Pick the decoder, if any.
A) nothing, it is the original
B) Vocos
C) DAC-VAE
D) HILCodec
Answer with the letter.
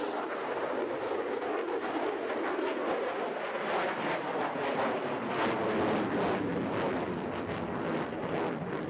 A